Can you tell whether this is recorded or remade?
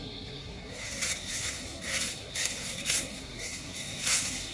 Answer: remade